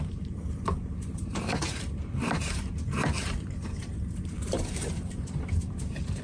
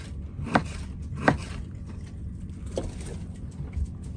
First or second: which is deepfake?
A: first